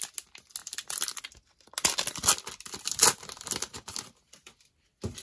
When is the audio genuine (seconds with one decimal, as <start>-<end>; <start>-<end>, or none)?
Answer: 0.0-5.2